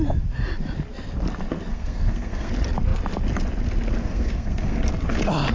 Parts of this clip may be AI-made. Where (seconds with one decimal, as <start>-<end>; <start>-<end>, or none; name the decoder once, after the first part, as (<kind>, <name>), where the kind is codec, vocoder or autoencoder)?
1.7-2.5 (codec, SNAC); 4.0-4.9